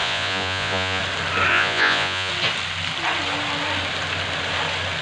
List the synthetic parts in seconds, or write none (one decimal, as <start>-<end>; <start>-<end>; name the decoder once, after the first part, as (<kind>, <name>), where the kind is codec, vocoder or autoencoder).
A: 0.0-1.0 (vocoder, Vocos); 1.5-2.3